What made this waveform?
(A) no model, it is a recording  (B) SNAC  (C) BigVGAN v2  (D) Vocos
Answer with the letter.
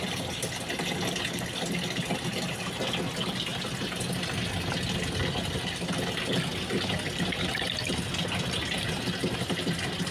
A